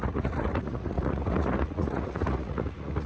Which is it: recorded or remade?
remade